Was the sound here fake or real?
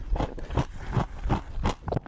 real